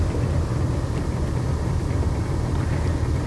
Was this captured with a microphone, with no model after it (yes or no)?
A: yes